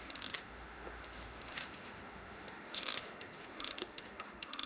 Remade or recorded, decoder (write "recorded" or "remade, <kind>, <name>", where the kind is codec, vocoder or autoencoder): remade, autoencoder, DAC-VAE